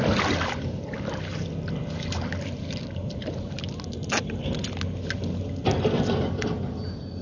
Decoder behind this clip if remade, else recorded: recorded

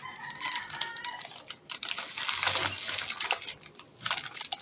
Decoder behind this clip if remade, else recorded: recorded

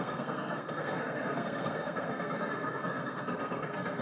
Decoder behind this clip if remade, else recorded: remade, codec, SNAC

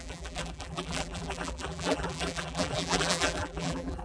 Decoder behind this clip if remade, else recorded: remade, vocoder, BigVGAN v2